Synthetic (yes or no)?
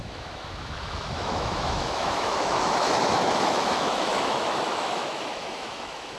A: yes